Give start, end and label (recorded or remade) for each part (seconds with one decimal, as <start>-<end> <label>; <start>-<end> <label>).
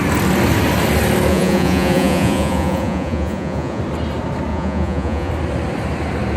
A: 0.0-1.3 recorded; 1.3-3.8 remade; 3.8-4.5 recorded; 4.5-5.3 remade; 5.3-6.4 recorded